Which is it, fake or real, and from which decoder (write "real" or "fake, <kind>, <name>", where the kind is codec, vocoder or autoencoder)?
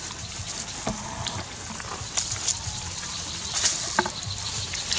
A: real